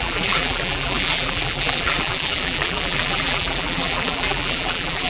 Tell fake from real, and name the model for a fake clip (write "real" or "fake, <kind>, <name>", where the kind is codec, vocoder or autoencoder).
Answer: fake, vocoder, BigVGAN v2